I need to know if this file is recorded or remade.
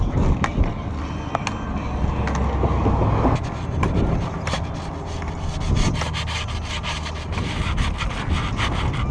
recorded